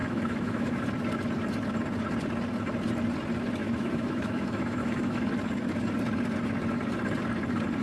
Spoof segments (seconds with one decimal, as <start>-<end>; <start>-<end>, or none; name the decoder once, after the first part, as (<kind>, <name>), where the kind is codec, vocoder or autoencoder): 0.0-0.8 (autoencoder, DAC-VAE); 3.6-5.3